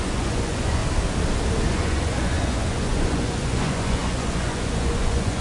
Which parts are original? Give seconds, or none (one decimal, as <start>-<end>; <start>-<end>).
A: 0.8-1.7